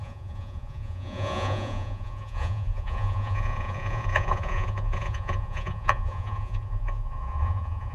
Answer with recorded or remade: remade